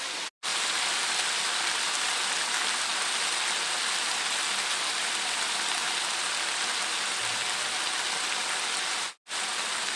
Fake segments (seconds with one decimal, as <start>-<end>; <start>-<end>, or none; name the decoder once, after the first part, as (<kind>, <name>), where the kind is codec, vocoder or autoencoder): none